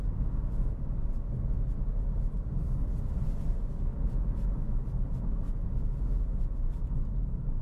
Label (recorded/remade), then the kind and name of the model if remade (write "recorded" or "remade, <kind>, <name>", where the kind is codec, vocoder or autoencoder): recorded